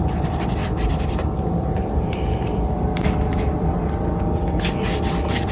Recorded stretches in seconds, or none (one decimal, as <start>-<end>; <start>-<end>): 0.0-0.6; 3.7-5.5